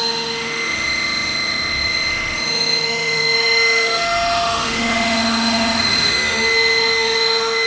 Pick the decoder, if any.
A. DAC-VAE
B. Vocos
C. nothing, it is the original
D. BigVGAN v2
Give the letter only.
A